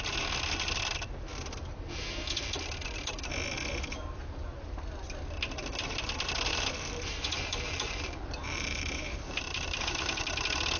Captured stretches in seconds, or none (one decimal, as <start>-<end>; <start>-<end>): 0.0-6.5; 10.2-10.8